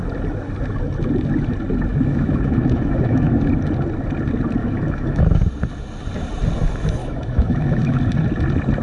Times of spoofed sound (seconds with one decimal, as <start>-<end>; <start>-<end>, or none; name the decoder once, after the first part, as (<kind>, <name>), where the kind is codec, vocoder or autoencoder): 1.9-3.4 (autoencoder, DAC-VAE); 4.6-5.4; 7.0-8.0